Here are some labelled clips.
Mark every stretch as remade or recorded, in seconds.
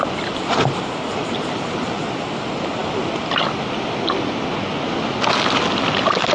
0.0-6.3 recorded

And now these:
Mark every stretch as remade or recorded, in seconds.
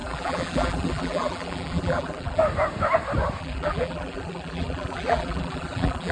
0.0-2.4 remade; 2.4-3.4 recorded; 3.4-6.1 remade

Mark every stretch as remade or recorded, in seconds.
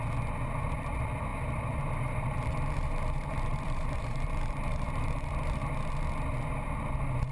0.0-1.3 recorded; 1.3-5.7 remade; 5.7-7.3 recorded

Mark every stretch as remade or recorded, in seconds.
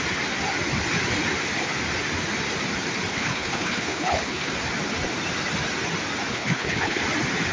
0.0-3.1 recorded; 3.1-4.5 remade; 4.5-6.3 recorded; 6.3-7.0 remade; 7.0-7.5 recorded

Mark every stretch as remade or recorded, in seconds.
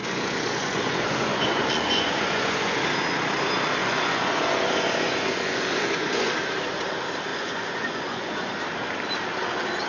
0.0-2.8 remade; 2.8-3.8 recorded; 3.8-6.3 remade; 6.3-7.3 recorded; 7.3-8.5 remade; 8.5-9.9 recorded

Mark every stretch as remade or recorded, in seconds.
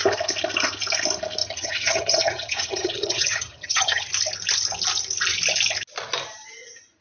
0.0-1.4 recorded; 1.4-4.1 remade; 4.1-7.0 recorded